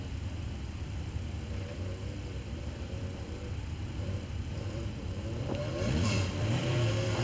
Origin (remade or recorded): remade